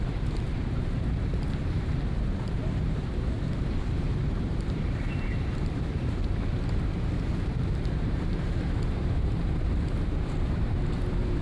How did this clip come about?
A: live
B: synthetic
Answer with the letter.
B